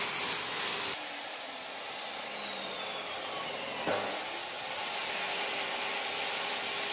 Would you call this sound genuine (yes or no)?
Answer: yes